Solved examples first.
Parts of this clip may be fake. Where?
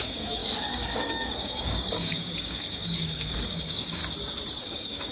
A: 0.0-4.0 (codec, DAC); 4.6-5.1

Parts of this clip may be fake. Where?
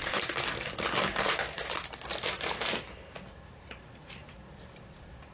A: 0.0-0.7 (vocoder, BigVGAN v2); 1.1-4.3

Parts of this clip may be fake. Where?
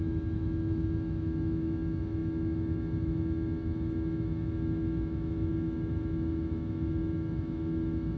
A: 0.0-8.2 (autoencoder, DAC-VAE)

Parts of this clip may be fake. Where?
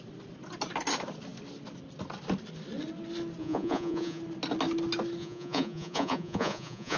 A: 3.4-4.2 (vocoder, Vocos); 5.2-7.0